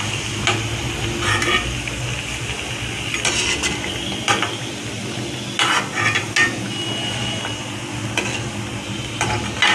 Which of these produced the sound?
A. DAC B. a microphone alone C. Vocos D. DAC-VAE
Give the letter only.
B